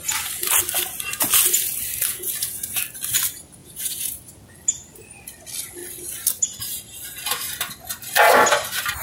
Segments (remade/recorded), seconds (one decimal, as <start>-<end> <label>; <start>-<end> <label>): 0.0-2.1 recorded; 2.1-2.8 remade; 2.8-3.6 recorded; 3.6-4.4 remade; 4.4-9.0 recorded